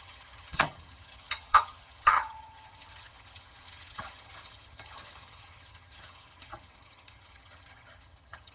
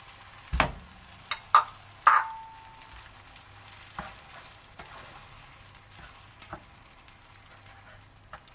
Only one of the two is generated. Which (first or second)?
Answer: first